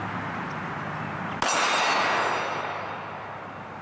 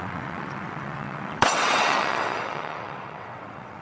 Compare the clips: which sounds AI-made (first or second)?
second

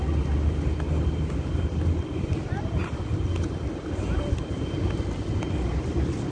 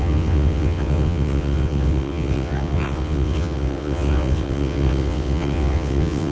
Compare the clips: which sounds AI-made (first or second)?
second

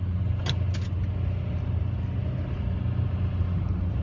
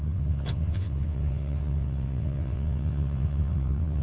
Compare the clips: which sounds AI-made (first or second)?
second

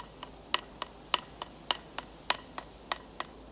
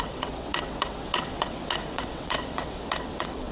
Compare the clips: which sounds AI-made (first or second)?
second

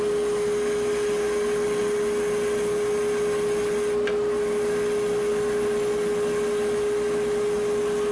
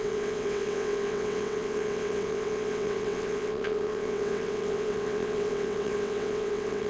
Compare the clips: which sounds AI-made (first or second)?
second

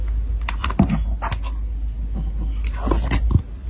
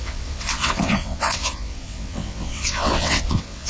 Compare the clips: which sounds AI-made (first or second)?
second